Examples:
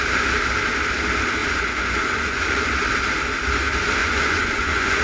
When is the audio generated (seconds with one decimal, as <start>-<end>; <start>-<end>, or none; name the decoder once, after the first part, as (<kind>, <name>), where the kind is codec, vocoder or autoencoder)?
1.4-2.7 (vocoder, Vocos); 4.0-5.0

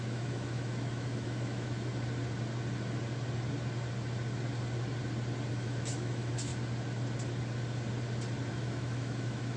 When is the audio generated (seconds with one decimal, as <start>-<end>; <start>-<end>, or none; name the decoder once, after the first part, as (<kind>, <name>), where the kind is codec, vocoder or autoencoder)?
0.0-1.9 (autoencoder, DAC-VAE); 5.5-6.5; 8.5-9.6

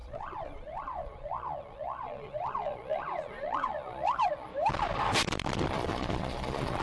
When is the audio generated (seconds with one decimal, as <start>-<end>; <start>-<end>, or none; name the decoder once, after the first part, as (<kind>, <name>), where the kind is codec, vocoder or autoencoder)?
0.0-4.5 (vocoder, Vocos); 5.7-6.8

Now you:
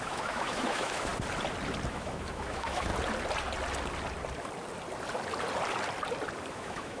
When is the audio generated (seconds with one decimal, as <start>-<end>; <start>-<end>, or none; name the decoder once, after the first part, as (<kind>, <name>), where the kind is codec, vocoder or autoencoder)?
0.0-1.1 (autoencoder, DAC-VAE); 1.9-2.9; 6.5-7.0